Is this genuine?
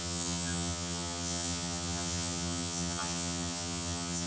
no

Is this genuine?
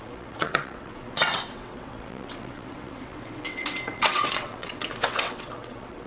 no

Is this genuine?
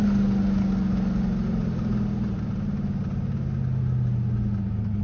yes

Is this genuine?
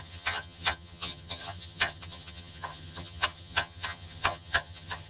no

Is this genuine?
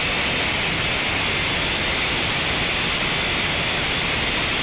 yes